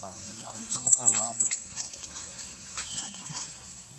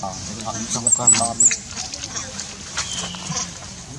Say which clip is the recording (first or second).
second